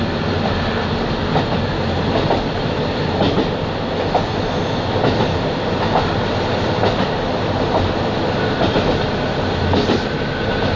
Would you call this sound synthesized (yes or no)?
no